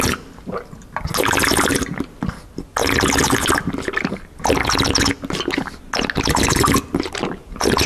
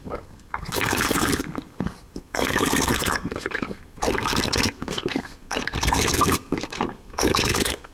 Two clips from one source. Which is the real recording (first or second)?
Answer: first